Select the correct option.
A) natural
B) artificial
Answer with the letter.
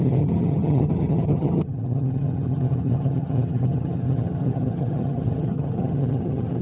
B